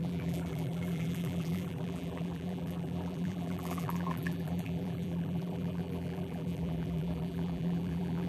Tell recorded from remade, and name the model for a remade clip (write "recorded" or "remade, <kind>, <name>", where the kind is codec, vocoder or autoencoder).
remade, vocoder, BigVGAN v2